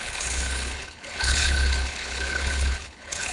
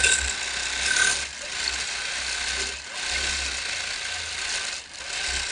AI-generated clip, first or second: first